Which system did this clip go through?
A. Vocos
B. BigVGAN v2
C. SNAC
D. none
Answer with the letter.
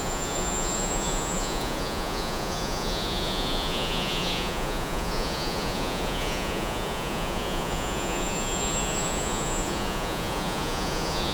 A